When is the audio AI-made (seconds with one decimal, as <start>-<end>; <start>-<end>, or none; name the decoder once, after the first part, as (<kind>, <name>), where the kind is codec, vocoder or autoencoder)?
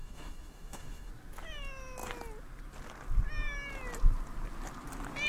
0.0-1.1 (autoencoder, DAC-VAE)